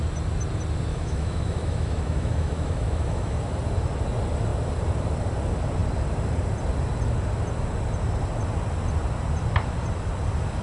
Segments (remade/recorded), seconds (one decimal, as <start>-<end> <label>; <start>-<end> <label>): 0.0-0.9 recorded; 0.9-3.4 remade; 3.4-10.6 recorded